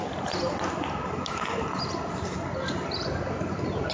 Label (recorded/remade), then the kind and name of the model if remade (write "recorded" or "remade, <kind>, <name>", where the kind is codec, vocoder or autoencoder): recorded